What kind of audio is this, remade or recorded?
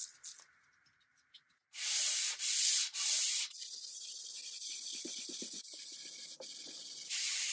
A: recorded